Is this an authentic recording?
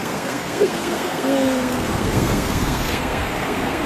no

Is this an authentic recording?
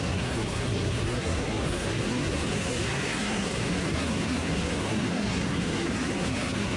no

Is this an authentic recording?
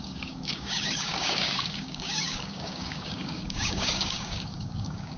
no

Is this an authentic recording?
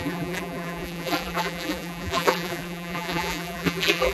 no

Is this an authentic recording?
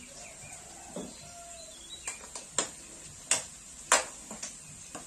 yes